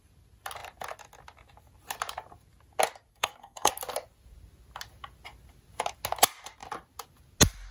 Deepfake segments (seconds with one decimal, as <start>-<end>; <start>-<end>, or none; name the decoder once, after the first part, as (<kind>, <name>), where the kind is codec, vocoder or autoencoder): 3.1-3.7 (codec, SNAC)